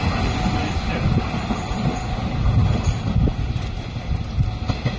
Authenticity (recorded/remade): recorded